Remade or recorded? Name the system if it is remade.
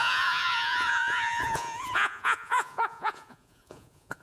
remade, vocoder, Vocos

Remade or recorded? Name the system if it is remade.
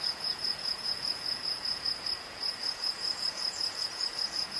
remade, vocoder, Vocos